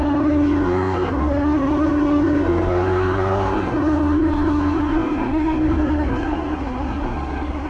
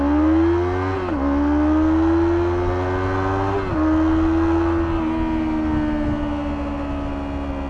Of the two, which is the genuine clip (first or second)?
second